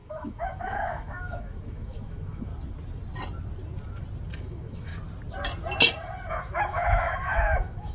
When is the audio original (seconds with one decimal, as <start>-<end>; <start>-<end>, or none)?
2.5-4.4; 4.9-6.3